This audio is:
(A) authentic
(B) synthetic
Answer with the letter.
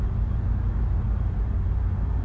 A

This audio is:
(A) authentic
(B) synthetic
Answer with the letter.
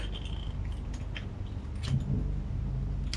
A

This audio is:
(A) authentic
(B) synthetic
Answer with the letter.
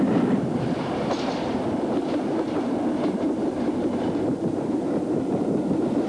B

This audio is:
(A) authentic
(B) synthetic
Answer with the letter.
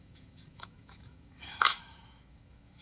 B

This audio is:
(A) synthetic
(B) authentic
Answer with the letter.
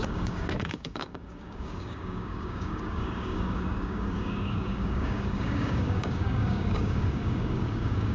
A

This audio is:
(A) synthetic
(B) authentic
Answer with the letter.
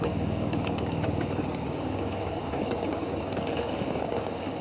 A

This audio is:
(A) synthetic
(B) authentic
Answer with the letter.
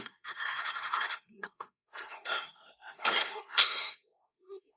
A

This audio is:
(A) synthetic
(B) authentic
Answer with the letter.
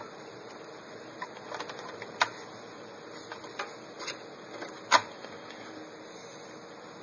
B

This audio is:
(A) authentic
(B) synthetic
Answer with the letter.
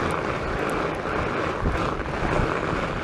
A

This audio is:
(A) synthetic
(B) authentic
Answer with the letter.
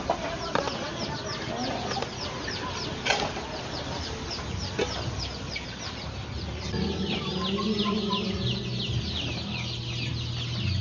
B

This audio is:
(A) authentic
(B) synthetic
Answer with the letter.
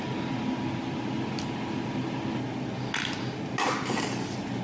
A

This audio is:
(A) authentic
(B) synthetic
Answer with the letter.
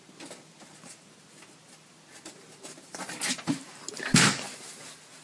A